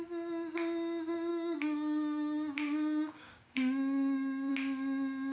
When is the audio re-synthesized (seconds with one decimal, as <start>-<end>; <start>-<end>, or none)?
1.3-4.5

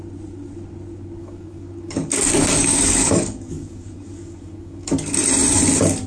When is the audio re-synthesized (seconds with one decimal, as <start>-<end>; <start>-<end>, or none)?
1.2-4.9

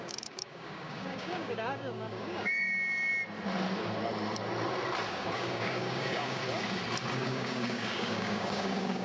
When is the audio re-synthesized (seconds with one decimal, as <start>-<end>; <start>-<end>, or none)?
0.0-3.1; 5.1-6.4; 7.1-9.0

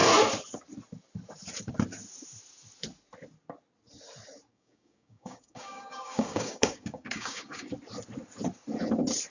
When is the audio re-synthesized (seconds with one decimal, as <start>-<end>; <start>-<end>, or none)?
4.5-7.7

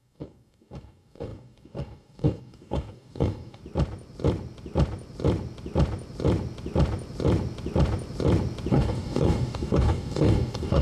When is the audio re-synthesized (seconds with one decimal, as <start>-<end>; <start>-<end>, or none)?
0.0-3.6; 8.7-10.8

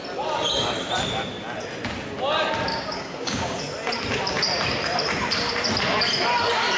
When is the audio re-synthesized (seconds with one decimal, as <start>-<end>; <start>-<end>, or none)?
2.7-3.6

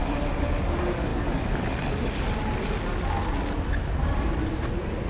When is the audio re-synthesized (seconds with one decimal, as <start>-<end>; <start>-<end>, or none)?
none

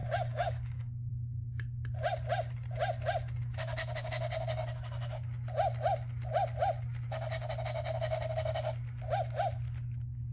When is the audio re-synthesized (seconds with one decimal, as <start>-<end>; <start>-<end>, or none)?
0.0-1.1